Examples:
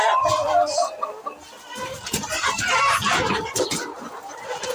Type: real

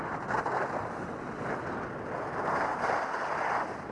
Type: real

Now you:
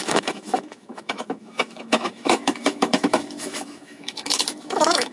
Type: fake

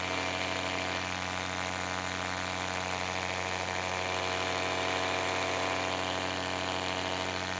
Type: real